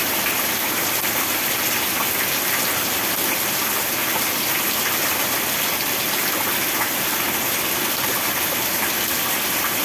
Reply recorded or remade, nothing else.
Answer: recorded